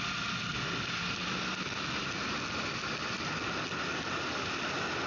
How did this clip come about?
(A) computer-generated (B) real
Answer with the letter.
B